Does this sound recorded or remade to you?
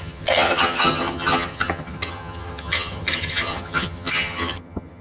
remade